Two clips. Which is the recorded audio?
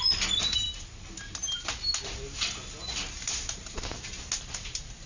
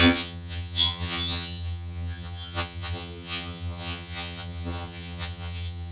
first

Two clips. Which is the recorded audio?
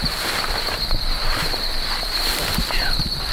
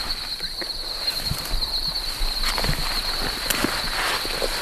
second